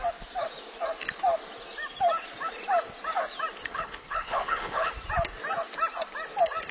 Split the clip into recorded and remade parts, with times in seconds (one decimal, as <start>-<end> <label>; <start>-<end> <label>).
0.0-3.7 recorded; 3.7-4.9 remade; 4.9-6.7 recorded